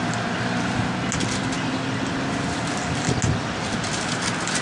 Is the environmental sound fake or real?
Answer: real